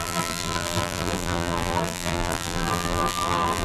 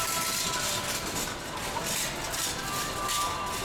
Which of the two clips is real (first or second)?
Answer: second